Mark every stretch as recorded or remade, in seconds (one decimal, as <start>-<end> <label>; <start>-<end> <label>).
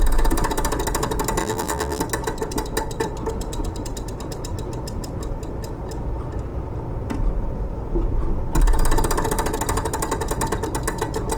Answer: 0.0-1.4 recorded; 1.4-2.0 remade; 2.0-11.4 recorded